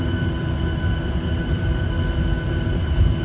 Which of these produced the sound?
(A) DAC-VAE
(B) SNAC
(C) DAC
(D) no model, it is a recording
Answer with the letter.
D